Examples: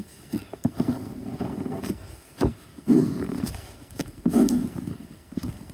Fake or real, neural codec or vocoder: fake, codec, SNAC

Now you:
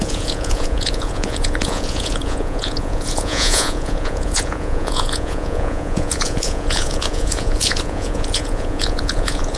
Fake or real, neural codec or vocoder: fake, vocoder, Vocos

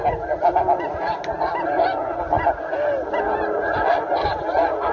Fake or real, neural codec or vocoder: real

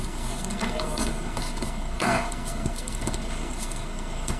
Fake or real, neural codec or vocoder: fake, codec, SNAC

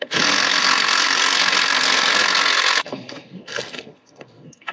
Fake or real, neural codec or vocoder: fake, codec, SNAC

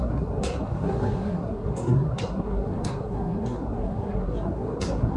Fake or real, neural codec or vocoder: fake, codec, SNAC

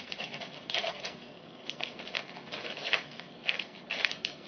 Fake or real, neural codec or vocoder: fake, codec, SNAC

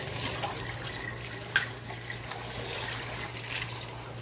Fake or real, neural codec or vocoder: real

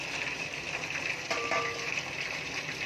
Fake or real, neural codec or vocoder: real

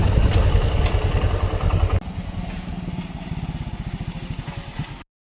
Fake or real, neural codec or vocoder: real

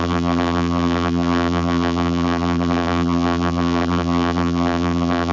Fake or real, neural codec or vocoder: fake, vocoder, BigVGAN v2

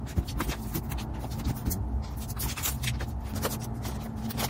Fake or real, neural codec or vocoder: real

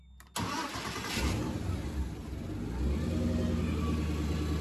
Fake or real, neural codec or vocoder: real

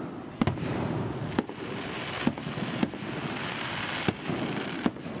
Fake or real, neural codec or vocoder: real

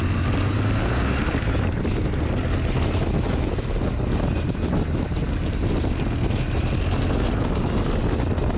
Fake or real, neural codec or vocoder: real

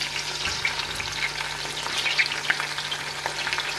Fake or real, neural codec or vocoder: real